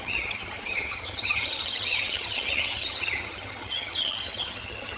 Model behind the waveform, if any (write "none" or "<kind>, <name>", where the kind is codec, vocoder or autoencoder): vocoder, HiFi-GAN